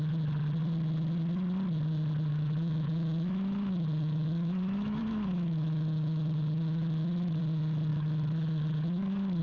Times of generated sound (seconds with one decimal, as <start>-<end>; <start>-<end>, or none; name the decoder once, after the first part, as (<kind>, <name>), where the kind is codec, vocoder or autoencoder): 2.3-7.4 (autoencoder, DAC-VAE); 7.9-9.4